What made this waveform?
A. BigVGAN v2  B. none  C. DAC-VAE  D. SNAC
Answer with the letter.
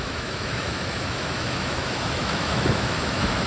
C